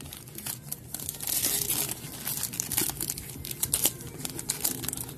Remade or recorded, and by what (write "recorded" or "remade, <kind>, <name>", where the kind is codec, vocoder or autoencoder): recorded